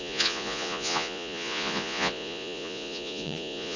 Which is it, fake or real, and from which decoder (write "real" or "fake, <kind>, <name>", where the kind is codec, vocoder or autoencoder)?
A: fake, vocoder, Vocos